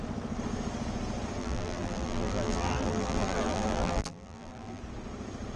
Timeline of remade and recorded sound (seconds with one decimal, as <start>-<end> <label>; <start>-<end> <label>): 0.0-1.4 recorded; 1.4-4.8 remade; 4.8-5.6 recorded